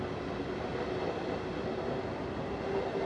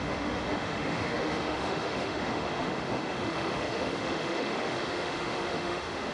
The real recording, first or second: first